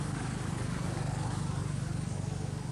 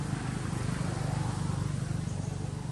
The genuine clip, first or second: second